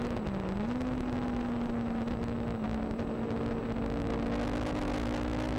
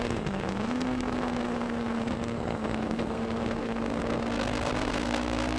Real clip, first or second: first